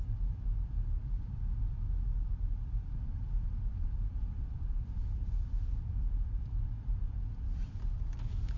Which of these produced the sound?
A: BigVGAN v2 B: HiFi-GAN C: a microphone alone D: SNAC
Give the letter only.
A